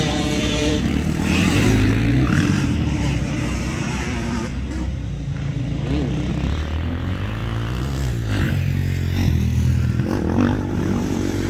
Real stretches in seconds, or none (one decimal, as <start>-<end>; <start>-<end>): 4.5-6.3; 7.4-8.4; 8.8-10.7